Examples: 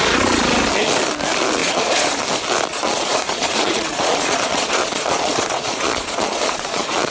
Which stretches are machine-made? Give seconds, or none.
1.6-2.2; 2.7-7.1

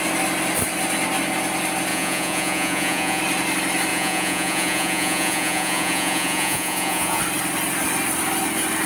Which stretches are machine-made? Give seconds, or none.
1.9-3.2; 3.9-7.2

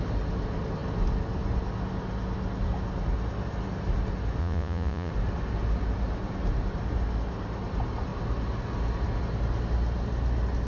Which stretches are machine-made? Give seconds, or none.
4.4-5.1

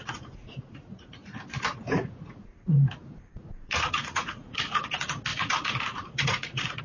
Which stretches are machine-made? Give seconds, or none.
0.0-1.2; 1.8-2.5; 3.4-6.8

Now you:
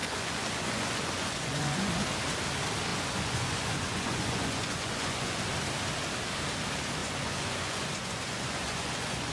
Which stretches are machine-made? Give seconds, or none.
0.0-1.9; 2.9-5.4; 7.0-9.3

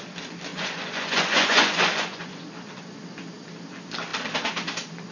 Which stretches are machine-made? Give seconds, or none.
0.5-2.4

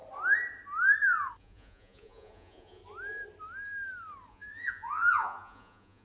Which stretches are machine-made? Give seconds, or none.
1.4-2.8; 4.3-6.0